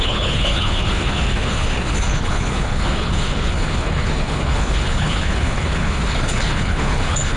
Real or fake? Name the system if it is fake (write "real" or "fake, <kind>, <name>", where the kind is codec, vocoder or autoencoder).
fake, codec, HILCodec